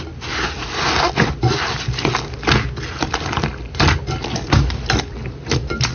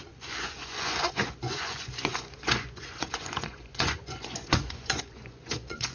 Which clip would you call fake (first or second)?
second